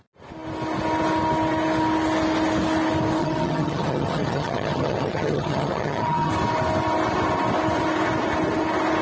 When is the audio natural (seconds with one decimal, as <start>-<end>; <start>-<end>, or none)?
0.0-3.2; 6.3-9.0